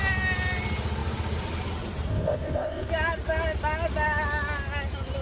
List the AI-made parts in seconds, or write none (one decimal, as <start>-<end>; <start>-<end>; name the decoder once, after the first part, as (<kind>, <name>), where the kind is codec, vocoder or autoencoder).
2.1-2.9 (codec, ZipCodec)